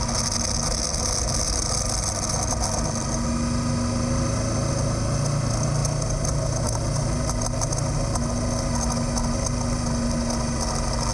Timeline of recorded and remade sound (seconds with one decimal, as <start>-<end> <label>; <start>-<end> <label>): 0.0-11.1 recorded